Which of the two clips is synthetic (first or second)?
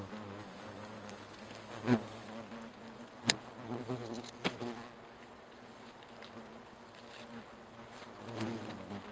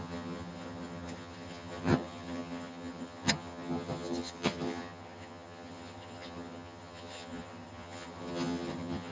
second